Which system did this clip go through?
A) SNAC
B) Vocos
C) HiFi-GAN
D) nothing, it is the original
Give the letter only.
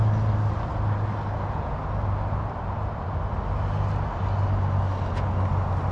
D